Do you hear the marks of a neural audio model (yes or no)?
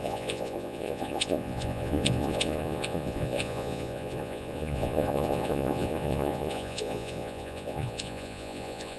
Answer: yes